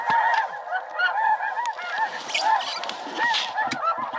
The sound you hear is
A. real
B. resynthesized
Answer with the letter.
A